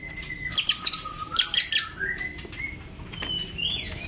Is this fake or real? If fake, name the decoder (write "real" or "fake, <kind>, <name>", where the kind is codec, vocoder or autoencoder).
real